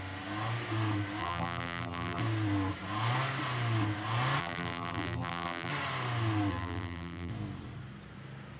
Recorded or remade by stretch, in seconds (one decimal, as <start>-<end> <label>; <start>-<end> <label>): 0.0-1.2 recorded; 1.2-2.2 remade; 2.2-4.4 recorded; 4.4-5.7 remade; 5.7-6.5 recorded; 6.5-7.3 remade; 7.3-8.6 recorded